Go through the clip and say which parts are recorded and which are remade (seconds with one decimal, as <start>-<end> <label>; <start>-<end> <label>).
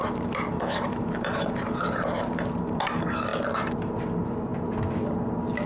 0.0-2.8 remade; 2.8-3.3 recorded; 3.3-3.9 remade; 3.9-5.7 recorded